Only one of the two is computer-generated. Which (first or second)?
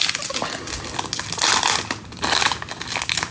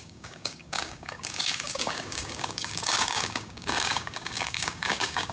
second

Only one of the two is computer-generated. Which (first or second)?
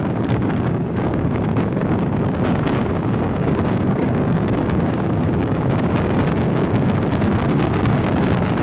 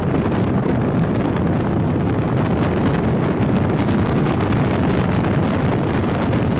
first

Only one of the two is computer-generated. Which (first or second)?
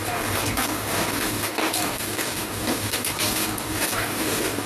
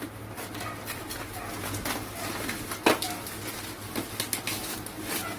first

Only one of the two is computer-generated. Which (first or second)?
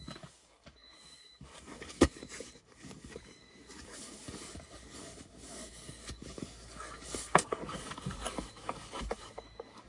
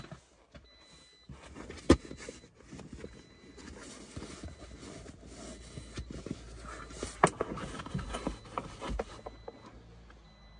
first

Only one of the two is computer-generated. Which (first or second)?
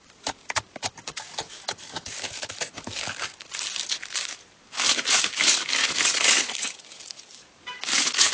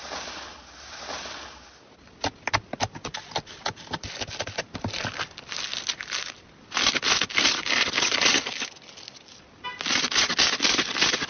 first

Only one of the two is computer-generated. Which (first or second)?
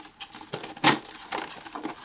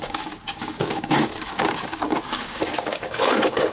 second